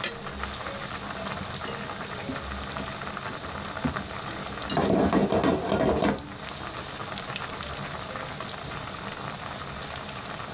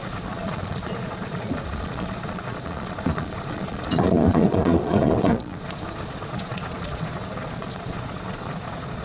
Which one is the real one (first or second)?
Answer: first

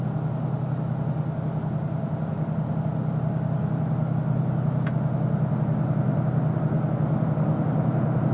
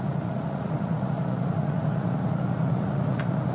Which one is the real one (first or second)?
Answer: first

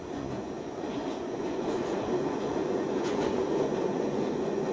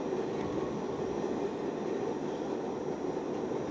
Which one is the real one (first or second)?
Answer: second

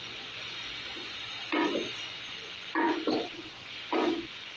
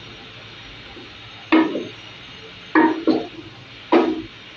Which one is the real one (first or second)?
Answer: second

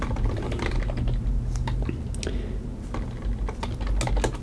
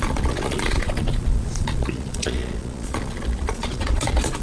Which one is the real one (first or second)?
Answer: first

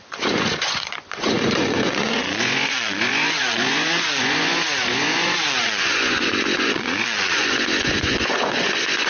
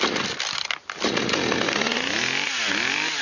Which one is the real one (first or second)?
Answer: second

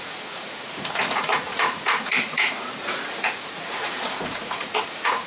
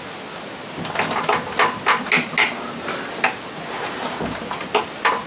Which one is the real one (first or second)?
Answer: second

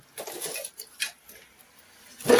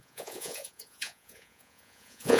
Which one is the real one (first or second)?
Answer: first